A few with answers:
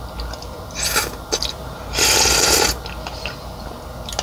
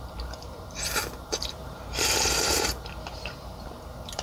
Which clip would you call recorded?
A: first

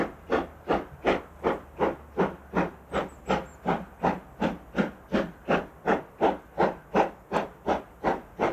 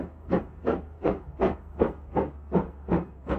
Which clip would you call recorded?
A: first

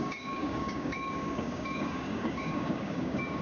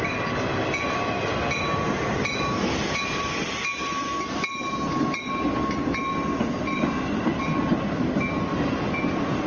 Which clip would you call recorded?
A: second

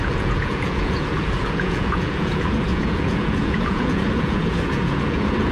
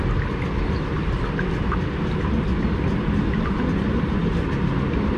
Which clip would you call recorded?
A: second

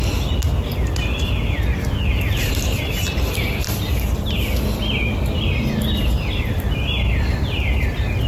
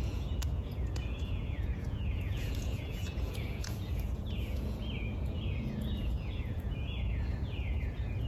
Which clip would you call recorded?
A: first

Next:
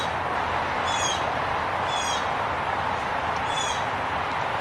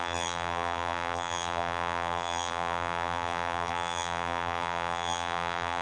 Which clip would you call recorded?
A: first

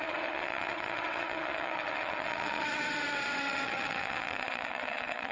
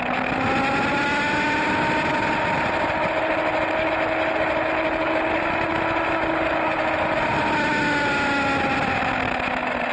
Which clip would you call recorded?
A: second